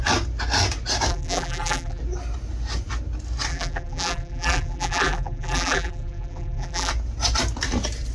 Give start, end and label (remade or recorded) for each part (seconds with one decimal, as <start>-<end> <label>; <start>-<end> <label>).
0.0-1.1 recorded; 1.1-2.0 remade; 2.0-3.5 recorded; 3.5-6.9 remade; 6.9-8.1 recorded